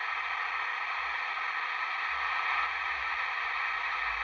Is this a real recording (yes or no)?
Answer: yes